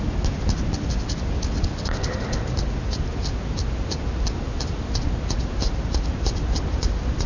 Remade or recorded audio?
recorded